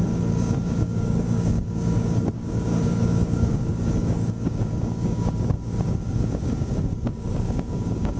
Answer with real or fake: fake